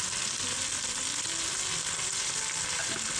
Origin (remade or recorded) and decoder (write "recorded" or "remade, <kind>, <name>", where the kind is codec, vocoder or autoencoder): recorded